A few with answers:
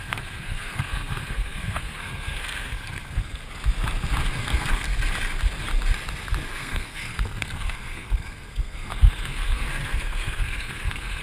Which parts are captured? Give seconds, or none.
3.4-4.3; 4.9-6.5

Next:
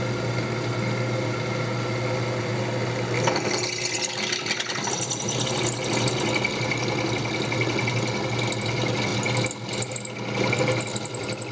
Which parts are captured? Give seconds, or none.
0.0-11.5

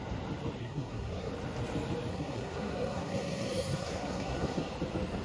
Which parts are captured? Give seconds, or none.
0.0-0.6; 1.3-2.1; 4.7-5.2

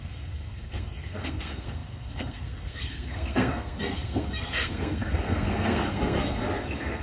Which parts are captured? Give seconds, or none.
none

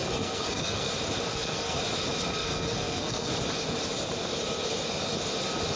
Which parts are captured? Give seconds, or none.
0.9-1.3; 1.8-2.4; 3.3-5.8

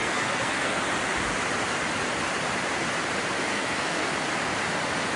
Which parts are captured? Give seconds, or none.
0.8-3.5; 4.1-5.2

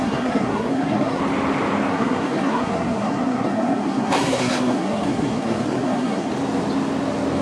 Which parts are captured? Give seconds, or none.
1.2-1.9; 6.3-7.4

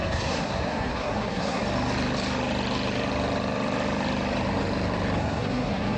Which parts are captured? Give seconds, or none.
1.6-5.2